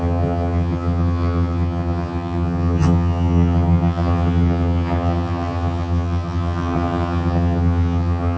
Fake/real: fake